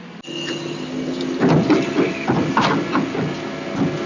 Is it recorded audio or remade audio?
recorded